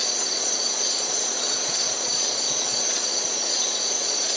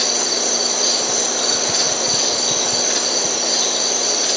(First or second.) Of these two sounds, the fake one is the first